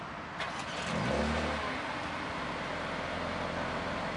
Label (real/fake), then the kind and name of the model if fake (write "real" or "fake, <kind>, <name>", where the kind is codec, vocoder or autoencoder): real